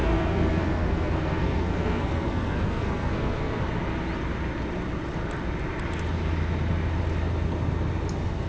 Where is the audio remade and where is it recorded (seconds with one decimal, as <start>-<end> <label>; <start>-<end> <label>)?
0.0-3.6 remade; 3.6-8.5 recorded